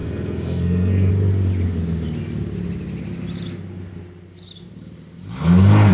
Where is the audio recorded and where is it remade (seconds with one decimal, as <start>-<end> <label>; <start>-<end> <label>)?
0.0-1.1 remade; 1.1-5.9 recorded